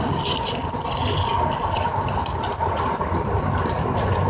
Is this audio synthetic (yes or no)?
no